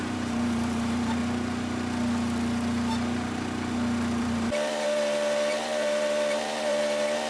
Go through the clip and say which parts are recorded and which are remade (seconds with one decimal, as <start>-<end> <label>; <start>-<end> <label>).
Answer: 0.0-1.2 remade; 1.2-4.2 recorded; 4.2-7.3 remade